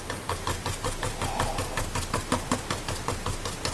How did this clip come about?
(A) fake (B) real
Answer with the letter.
B